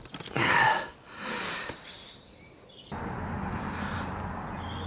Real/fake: real